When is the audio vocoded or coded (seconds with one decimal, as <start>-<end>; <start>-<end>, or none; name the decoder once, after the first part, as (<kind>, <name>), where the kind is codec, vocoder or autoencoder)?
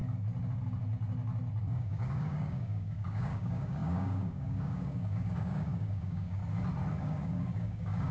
1.6-6.4 (codec, DAC); 7.0-8.1